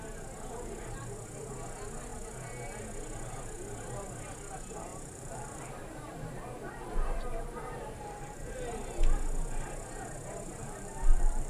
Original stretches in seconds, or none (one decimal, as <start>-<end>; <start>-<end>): 0.0-4.9; 8.4-10.6